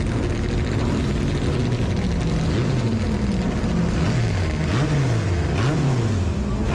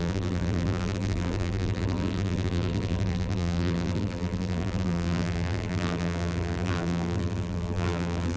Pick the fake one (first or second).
second